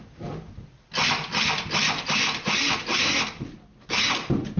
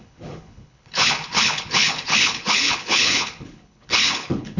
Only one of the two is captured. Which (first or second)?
first